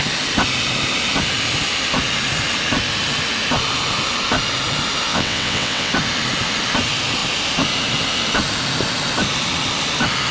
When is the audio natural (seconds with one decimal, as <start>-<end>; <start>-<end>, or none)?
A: 0.0-5.1; 5.9-10.3